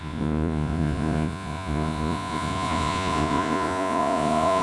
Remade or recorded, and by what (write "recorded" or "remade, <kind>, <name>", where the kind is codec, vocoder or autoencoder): remade, vocoder, Vocos